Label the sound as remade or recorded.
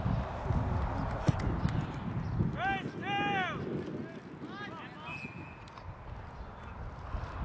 recorded